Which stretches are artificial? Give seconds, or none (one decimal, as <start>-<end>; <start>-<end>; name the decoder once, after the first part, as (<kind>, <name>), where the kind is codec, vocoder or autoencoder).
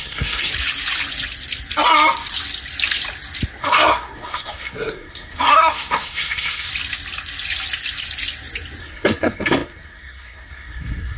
0.0-0.5 (codec, SNAC); 3.6-6.7; 8.8-11.2